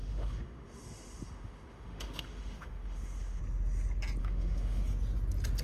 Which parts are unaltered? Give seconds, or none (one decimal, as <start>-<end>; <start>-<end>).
3.4-4.2; 4.8-5.6